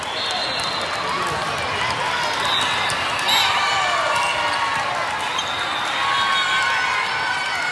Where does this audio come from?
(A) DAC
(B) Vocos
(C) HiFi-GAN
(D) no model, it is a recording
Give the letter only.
D